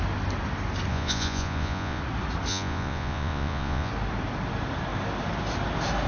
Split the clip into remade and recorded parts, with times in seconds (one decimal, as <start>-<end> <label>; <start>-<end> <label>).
0.0-0.9 recorded; 0.9-2.0 remade; 2.0-2.5 recorded; 2.5-3.9 remade; 3.9-6.1 recorded